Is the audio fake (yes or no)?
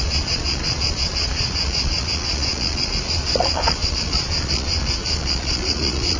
yes